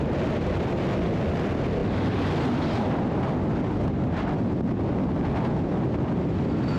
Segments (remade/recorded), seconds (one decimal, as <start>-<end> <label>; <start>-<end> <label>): 0.0-6.8 recorded